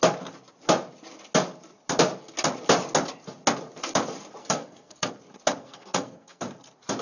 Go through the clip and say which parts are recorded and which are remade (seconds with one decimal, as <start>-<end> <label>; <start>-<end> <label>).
0.0-4.4 recorded; 4.4-5.1 remade; 5.1-5.6 recorded; 5.6-6.4 remade; 6.4-7.0 recorded